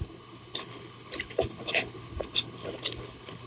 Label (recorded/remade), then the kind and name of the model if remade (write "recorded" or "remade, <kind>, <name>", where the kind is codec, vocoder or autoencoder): remade, codec, HILCodec